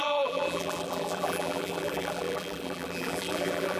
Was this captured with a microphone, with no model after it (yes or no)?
no